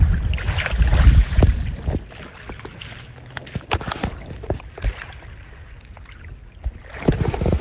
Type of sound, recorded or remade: recorded